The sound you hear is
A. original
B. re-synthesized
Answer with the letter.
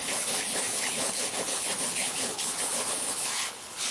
B